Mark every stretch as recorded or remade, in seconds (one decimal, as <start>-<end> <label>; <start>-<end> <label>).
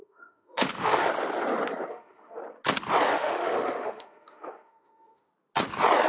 0.0-1.1 remade; 1.1-1.9 recorded; 1.9-2.4 remade; 2.4-3.1 recorded; 3.1-5.3 remade; 5.3-6.1 recorded